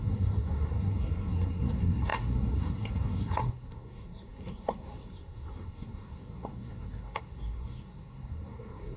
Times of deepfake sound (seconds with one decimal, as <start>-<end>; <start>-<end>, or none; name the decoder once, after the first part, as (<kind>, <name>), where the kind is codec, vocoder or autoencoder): 0.0-9.0 (codec, SNAC)